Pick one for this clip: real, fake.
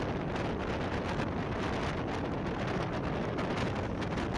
real